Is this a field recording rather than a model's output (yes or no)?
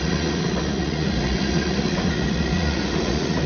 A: no